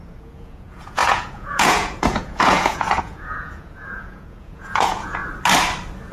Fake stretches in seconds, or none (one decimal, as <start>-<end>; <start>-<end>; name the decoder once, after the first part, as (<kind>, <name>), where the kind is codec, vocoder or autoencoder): 0.0-5.2 (vocoder, Vocos)